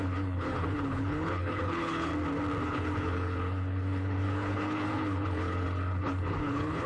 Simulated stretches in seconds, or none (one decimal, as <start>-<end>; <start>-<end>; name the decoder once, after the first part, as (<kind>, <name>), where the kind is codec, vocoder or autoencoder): 0.0-2.1 (codec, HILCodec); 2.6-6.9